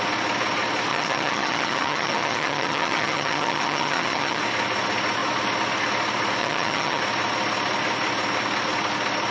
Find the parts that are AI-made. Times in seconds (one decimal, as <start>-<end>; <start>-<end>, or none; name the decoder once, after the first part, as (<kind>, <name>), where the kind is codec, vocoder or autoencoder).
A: 0.9-4.4 (vocoder, HiFi-GAN); 6.4-7.0